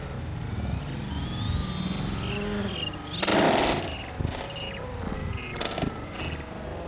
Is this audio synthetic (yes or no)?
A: no